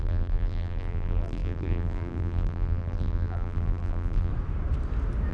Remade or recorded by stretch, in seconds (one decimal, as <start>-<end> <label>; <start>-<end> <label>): 0.0-4.3 remade; 4.3-5.3 recorded

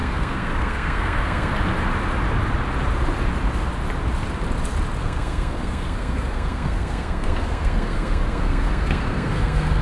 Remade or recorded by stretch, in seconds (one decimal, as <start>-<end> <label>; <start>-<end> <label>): 0.0-1.5 remade; 1.5-5.0 recorded; 5.0-9.8 remade